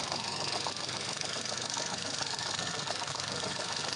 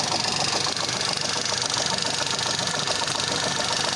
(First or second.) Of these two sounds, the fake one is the first